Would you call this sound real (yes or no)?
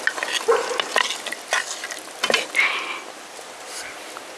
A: yes